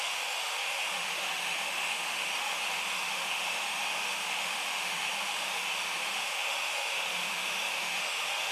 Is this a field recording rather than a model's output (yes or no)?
no